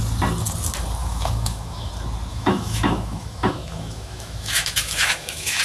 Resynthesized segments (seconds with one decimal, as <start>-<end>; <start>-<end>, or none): 1.0-1.9; 2.3-5.6